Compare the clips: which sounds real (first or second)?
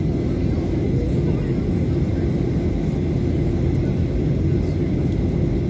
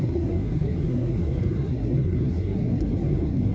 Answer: first